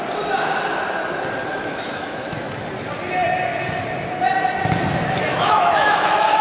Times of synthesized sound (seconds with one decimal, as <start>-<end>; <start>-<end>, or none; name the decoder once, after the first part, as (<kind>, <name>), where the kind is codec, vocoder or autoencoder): 1.5-2.7 (autoencoder, DAC-VAE); 5.3-6.4